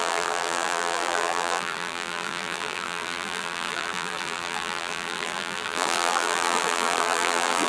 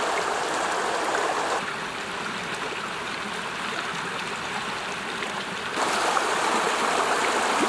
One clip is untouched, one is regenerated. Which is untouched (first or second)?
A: second